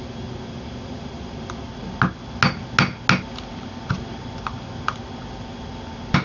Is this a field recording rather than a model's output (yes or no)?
yes